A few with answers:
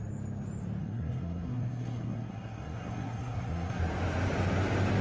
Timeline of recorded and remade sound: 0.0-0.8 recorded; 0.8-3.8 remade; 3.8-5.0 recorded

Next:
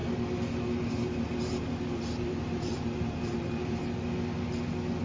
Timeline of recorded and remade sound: 0.0-0.9 recorded; 0.9-3.8 remade; 3.8-5.0 recorded

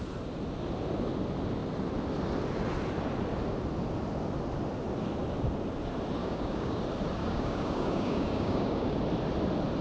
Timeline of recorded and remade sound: 0.0-6.2 recorded; 6.2-6.8 remade; 6.8-7.2 recorded; 7.2-9.0 remade; 9.0-9.8 recorded